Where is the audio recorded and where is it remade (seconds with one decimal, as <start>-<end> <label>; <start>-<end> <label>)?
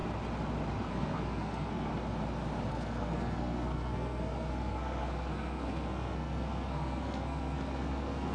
0.0-0.9 recorded; 0.9-1.9 remade; 1.9-2.7 recorded; 2.7-8.3 remade